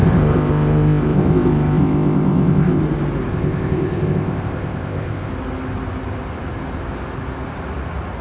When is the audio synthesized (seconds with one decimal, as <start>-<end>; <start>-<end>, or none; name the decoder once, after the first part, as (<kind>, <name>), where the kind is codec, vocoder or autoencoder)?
0.0-2.8 (codec, ZipCodec); 3.3-5.3